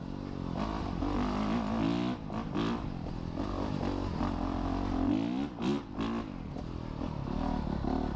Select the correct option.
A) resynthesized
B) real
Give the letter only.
B